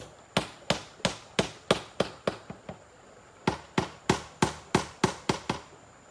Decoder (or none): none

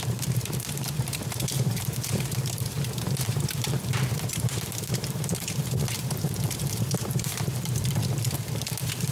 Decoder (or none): vocoder, BigVGAN v2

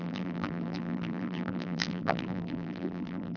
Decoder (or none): vocoder, BigVGAN v2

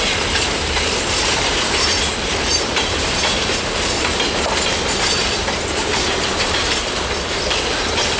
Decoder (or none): vocoder, BigVGAN v2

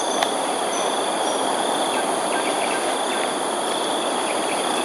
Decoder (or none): vocoder, BigVGAN v2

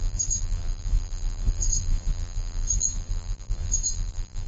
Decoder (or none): vocoder, BigVGAN v2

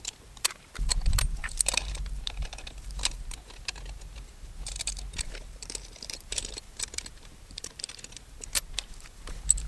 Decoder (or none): vocoder, BigVGAN v2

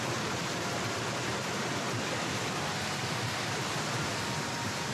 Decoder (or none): vocoder, BigVGAN v2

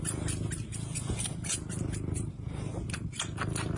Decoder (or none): vocoder, BigVGAN v2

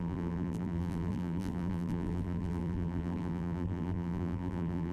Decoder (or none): vocoder, BigVGAN v2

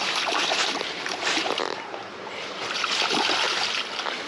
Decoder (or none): vocoder, BigVGAN v2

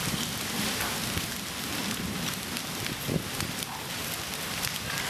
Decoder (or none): none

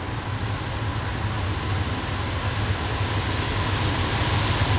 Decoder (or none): none